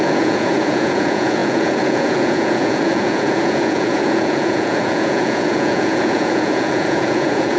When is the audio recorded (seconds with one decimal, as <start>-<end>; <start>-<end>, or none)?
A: none